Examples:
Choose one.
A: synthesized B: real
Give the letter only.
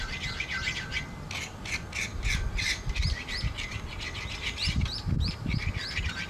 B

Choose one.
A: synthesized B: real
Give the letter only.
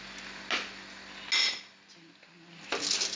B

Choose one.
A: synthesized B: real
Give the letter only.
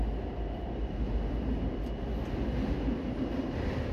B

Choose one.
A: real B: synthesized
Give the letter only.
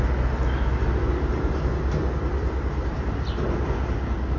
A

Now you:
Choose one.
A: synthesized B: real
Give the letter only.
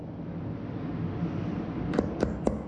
B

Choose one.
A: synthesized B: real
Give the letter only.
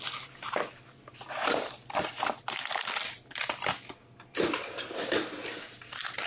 B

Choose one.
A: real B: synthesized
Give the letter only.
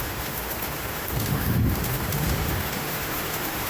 B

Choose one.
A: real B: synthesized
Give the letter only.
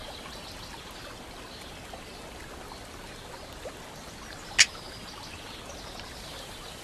A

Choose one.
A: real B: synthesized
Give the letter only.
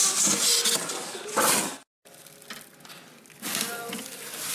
A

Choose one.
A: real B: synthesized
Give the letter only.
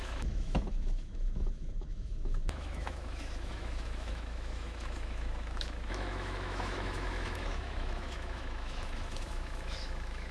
B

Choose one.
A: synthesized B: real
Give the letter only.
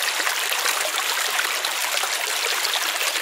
B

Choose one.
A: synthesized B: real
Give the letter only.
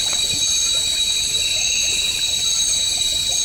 B